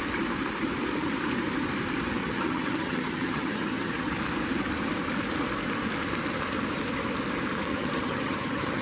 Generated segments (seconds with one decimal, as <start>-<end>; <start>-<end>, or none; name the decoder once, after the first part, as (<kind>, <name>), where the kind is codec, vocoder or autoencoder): 2.2-4.1 (vocoder, HiFi-GAN); 7.7-8.8